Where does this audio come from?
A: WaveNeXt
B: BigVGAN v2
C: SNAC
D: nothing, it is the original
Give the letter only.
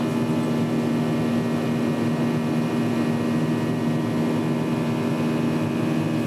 D